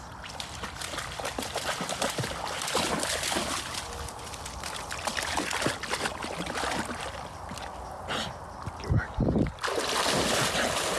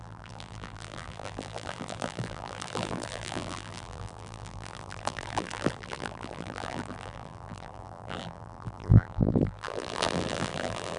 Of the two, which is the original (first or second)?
first